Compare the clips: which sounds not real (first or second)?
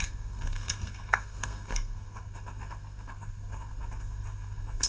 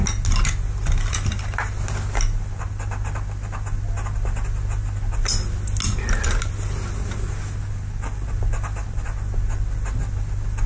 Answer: first